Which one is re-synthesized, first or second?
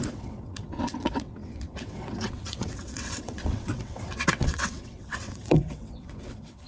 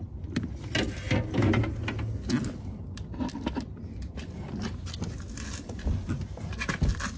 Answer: first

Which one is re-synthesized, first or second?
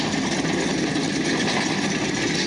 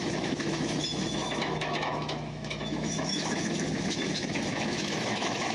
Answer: second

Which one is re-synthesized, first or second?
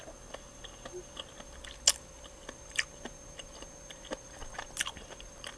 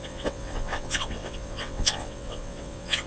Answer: second